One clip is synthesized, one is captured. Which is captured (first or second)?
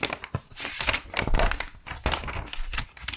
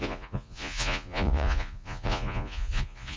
first